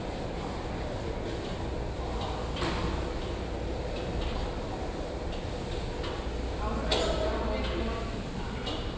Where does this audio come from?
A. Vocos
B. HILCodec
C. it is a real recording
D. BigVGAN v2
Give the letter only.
C